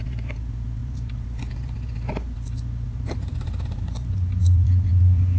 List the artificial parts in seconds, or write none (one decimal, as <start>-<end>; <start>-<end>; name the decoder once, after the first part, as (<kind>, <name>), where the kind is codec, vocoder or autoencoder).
none